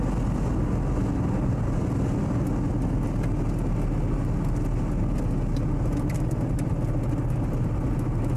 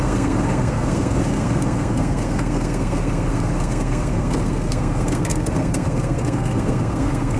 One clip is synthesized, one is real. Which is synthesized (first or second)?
second